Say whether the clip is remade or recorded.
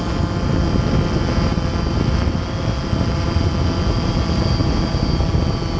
recorded